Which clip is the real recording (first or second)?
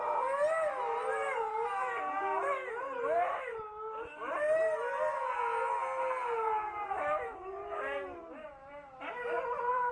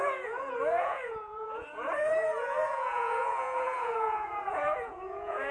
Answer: first